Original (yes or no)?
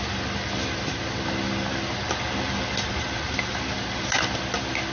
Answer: yes